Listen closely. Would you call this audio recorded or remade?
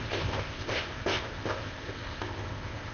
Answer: remade